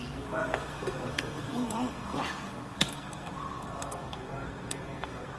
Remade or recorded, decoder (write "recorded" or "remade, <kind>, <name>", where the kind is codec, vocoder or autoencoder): remade, codec, SNAC